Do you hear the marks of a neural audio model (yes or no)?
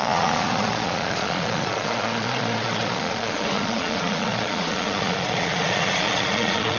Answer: yes